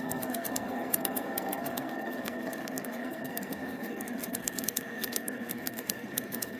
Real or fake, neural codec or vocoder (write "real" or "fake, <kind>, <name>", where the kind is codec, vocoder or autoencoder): fake, codec, SNAC